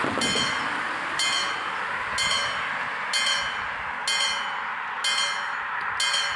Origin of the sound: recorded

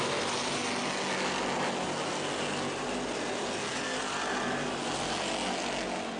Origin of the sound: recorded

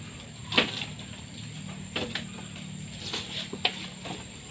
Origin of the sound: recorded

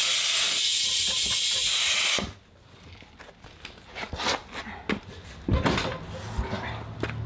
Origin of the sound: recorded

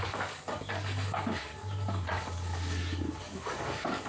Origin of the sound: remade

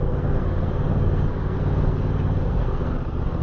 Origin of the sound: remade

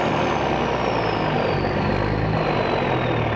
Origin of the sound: recorded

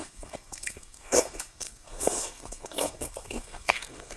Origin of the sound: remade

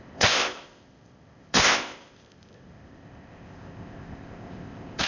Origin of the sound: remade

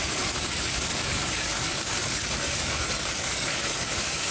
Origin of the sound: remade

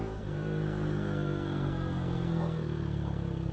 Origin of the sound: remade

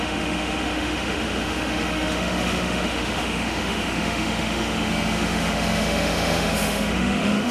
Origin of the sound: remade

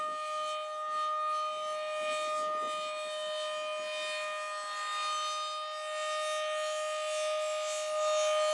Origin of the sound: recorded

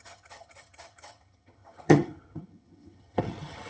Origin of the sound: remade